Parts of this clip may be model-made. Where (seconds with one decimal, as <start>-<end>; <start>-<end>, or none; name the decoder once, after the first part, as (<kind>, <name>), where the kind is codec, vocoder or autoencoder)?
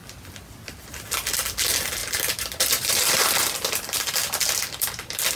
2.0-5.4 (vocoder, BigVGAN v2)